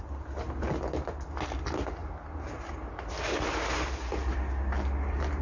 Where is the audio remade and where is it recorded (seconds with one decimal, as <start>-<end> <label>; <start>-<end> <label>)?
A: 0.0-5.4 recorded